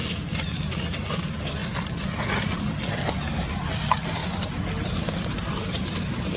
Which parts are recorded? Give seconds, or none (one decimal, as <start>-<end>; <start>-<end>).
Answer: 0.7-4.2